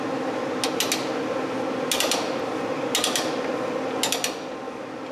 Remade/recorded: recorded